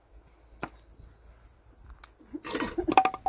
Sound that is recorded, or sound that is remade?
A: recorded